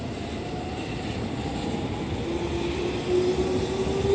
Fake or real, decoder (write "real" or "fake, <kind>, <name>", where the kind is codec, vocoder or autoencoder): real